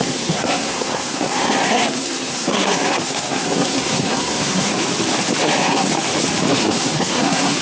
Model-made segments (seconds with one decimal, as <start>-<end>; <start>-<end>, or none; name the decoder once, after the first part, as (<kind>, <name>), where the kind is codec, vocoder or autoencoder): 0.0-4.7 (codec, SNAC); 5.4-5.9; 6.5-7.6